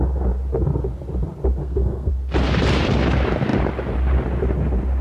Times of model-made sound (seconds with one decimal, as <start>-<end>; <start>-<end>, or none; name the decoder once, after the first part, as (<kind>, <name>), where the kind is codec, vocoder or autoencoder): 1.6-2.1 (codec, SNAC)